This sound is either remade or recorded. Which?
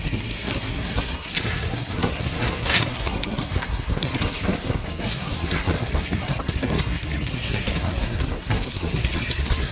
remade